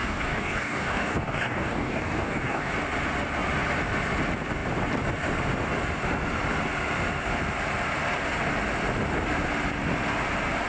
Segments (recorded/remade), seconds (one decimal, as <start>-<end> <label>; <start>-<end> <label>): 0.0-2.7 remade; 2.7-10.7 recorded